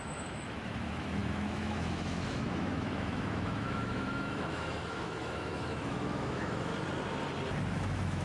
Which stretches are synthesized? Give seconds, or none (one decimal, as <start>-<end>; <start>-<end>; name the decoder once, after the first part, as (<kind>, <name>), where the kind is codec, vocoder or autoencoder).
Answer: 0.0-6.7 (autoencoder, DAC-VAE); 7.7-8.2